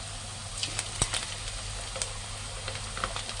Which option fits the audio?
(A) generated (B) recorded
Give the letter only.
B